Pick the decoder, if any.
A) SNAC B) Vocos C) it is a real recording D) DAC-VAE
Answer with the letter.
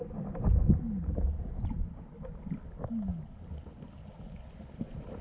C